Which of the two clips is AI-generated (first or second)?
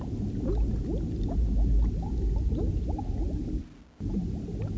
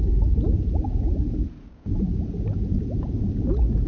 second